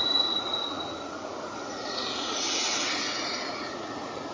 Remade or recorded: remade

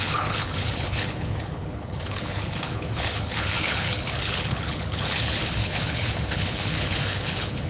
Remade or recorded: remade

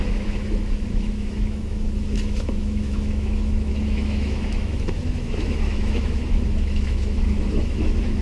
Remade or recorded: remade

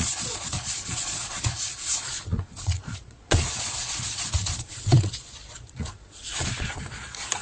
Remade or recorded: remade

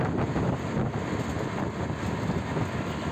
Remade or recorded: recorded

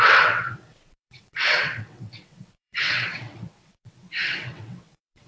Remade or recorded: remade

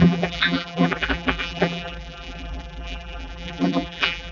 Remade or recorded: remade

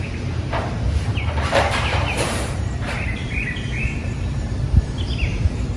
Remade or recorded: remade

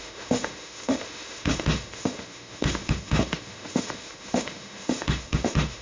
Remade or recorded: remade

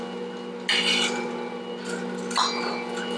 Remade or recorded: recorded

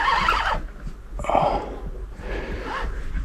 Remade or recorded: recorded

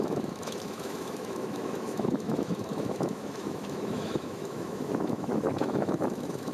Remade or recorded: remade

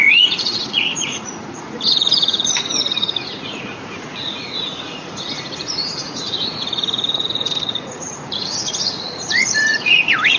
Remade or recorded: remade